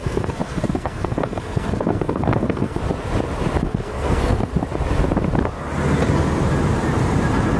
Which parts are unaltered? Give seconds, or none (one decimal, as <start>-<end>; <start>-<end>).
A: 2.8-3.6; 4.5-7.6